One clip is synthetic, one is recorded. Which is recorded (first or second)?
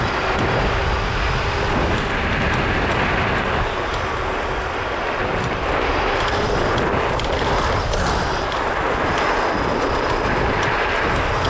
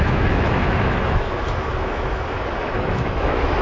first